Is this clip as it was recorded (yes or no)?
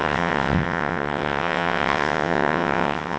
no